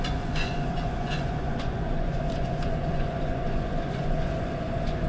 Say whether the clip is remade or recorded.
remade